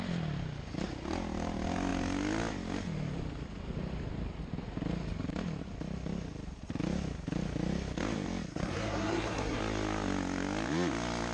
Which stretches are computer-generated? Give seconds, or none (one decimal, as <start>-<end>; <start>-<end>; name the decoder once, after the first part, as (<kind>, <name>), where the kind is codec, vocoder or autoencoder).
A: 8.5-9.6 (codec, SNAC)